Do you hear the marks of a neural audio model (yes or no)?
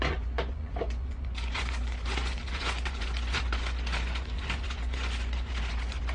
yes